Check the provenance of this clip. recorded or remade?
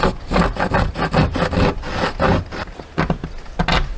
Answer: recorded